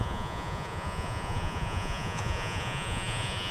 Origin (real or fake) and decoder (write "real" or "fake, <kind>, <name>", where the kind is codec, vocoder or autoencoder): fake, vocoder, Vocos